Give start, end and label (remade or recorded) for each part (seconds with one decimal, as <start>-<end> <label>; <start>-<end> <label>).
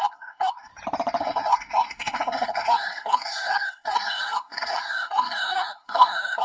0.0-0.7 remade; 0.7-1.2 recorded; 1.2-6.4 remade